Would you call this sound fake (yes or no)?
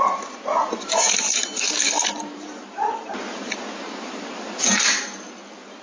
yes